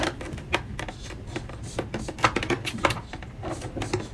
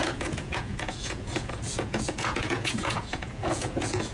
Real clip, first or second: first